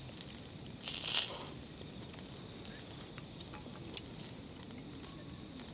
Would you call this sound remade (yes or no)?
no